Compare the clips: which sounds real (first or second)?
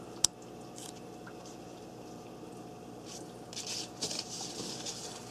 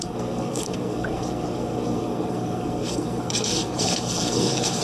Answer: first